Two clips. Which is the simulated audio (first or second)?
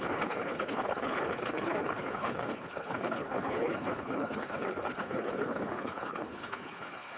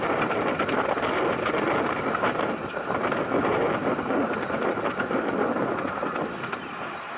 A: first